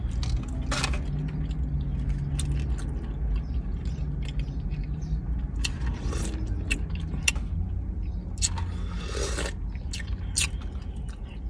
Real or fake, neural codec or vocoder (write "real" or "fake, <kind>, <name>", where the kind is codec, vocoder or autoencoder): real